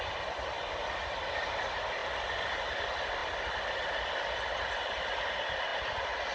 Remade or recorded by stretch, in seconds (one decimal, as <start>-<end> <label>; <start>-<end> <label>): 0.0-6.3 recorded